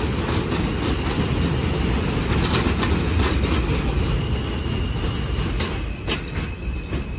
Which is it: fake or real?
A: real